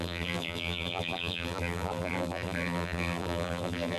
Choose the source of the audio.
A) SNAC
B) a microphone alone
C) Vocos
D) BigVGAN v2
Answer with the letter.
D